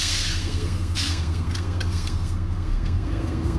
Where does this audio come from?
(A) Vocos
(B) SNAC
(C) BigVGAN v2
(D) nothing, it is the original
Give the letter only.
B